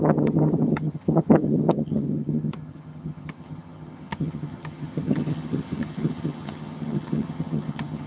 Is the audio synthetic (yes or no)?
yes